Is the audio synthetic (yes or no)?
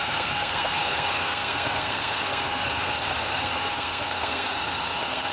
yes